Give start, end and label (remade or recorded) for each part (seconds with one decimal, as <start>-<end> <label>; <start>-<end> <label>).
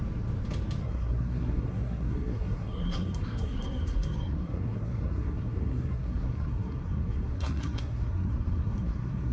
0.0-0.8 recorded; 0.8-9.3 remade